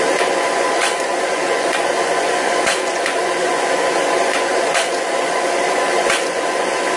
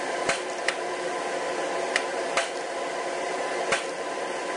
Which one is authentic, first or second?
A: second